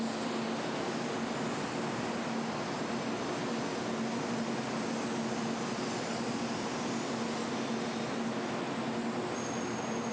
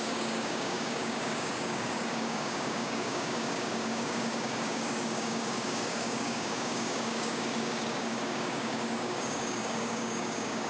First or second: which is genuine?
first